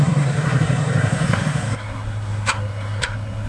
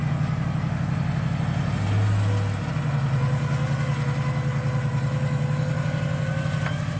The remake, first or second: first